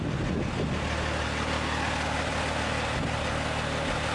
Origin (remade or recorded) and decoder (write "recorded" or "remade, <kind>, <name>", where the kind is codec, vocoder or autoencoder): recorded